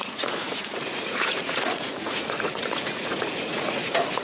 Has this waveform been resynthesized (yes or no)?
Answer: yes